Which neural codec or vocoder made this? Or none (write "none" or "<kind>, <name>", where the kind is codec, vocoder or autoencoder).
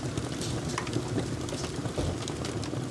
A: none